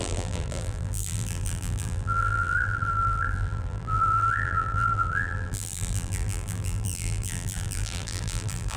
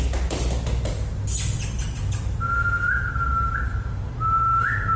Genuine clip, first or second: second